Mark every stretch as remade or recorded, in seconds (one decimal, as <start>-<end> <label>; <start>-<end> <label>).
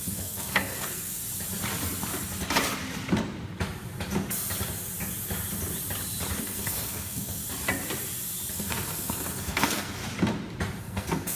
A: 0.0-1.2 remade; 1.2-6.4 recorded; 6.4-7.4 remade; 7.4-8.5 recorded; 8.5-10.0 remade; 10.0-10.8 recorded; 10.8-11.4 remade